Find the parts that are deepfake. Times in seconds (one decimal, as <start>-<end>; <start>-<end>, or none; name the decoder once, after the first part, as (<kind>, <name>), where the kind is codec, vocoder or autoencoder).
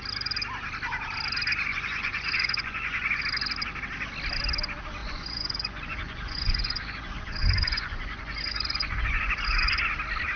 1.7-3.2 (vocoder, Vocos); 5.0-9.9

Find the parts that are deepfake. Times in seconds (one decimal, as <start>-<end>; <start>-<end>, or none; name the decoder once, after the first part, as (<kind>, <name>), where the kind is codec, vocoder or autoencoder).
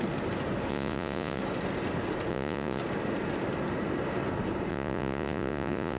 0.7-1.4 (vocoder, Vocos); 2.3-2.8; 4.7-6.0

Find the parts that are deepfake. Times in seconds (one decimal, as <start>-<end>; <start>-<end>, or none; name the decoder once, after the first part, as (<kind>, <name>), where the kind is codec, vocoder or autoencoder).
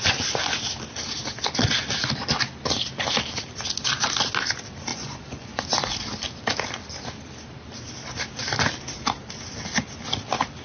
4.9-5.6 (vocoder, Vocos)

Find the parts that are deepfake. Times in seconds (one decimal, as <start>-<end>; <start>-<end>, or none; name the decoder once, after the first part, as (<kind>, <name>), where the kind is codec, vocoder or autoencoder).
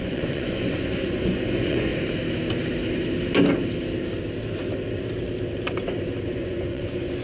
0.0-1.9 (vocoder, Vocos); 6.2-7.2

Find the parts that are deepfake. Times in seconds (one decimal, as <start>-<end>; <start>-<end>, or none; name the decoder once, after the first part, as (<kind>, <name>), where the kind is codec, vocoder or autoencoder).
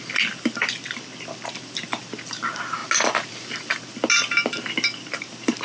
none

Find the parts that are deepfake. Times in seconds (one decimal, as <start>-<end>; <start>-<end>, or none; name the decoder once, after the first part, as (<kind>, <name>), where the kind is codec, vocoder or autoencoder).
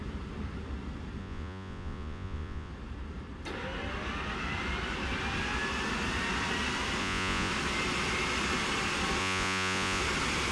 1.2-2.7 (vocoder, Vocos); 7.0-7.5; 9.2-10.0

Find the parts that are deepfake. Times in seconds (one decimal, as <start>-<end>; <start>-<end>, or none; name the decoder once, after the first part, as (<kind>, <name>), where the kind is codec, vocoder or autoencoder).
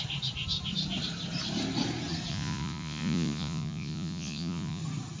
2.3-4.8 (vocoder, Vocos)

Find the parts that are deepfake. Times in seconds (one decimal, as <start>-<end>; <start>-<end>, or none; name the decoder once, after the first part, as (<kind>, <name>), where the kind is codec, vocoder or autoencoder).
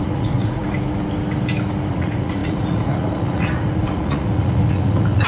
0.0-0.6 (vocoder, Vocos); 1.9-5.3